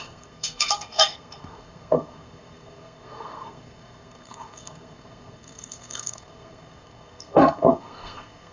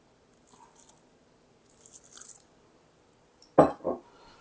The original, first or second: second